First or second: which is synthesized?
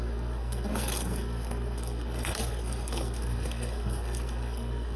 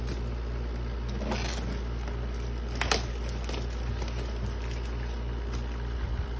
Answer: first